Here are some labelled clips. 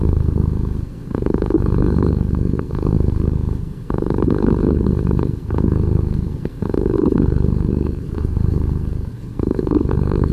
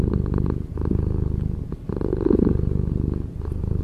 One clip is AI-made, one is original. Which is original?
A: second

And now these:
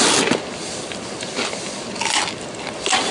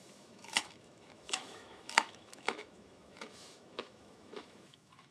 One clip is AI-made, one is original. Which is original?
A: first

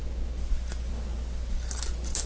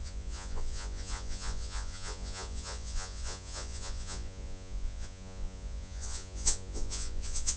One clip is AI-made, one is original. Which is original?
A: first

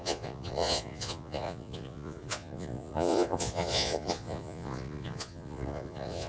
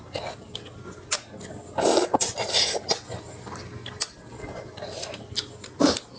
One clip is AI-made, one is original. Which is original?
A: second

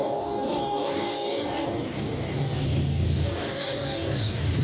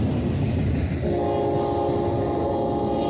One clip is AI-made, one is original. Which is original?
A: second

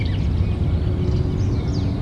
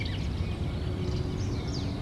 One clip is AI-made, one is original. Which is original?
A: first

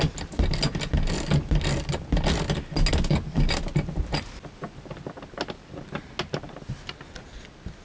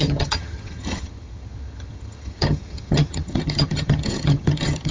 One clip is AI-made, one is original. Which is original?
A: first